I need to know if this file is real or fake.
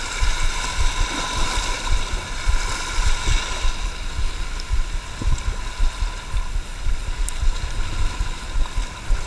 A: real